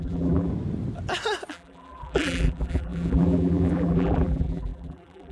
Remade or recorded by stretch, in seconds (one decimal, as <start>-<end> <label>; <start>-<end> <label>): 0.0-0.5 remade; 0.5-1.5 recorded; 1.5-5.3 remade